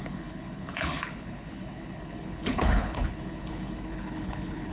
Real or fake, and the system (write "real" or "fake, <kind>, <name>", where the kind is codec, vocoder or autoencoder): fake, codec, HILCodec